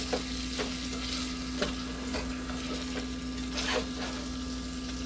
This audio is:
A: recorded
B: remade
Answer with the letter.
A